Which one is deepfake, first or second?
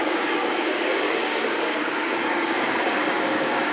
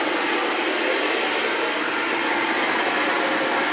first